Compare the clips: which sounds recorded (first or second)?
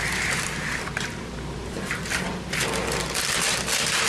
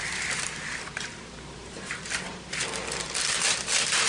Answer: first